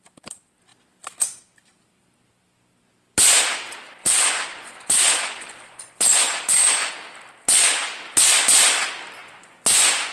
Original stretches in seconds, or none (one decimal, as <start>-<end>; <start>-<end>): 0.0-4.0; 6.9-9.2